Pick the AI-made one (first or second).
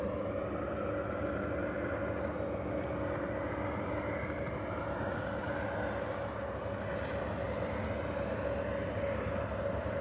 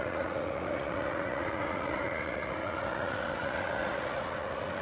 second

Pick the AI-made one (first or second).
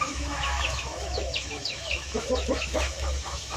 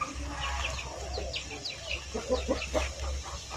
first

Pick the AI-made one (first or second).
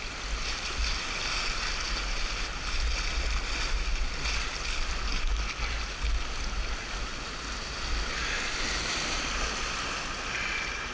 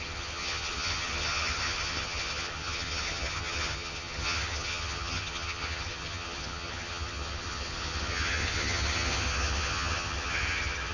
second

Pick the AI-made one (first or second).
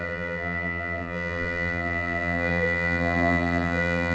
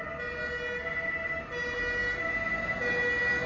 first